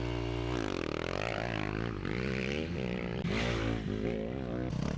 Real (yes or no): yes